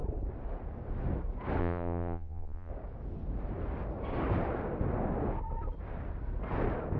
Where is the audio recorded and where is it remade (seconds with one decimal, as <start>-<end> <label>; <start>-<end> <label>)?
0.0-1.6 recorded; 1.6-2.7 remade; 2.7-7.0 recorded